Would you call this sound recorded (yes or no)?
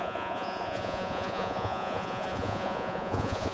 no